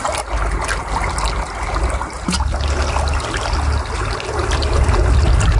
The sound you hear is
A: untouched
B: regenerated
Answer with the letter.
A